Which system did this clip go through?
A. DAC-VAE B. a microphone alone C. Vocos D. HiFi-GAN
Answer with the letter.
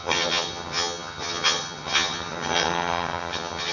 D